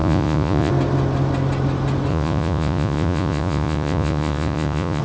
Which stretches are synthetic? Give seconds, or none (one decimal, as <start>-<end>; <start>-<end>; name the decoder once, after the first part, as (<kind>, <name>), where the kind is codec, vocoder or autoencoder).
0.0-0.7 (vocoder, Vocos); 2.1-5.0